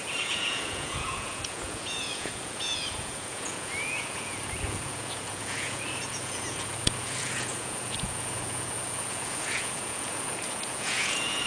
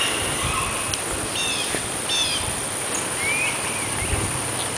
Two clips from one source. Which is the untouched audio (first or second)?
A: second